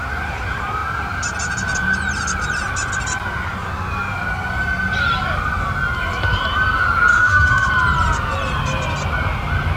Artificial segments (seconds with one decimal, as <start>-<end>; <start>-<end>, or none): 7.1-7.7